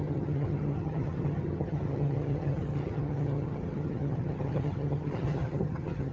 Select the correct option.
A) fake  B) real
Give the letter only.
A